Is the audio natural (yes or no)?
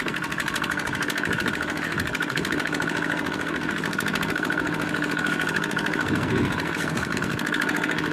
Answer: no